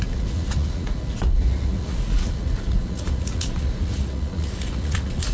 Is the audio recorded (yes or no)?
no